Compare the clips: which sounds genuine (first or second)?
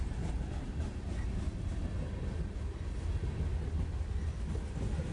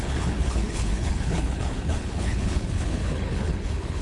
first